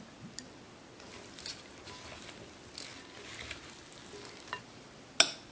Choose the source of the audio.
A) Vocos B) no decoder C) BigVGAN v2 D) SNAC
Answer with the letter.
B